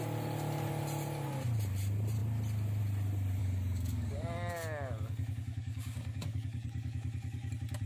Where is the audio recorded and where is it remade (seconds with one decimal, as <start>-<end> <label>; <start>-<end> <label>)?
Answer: 0.0-3.4 recorded; 3.4-7.5 remade; 7.5-7.9 recorded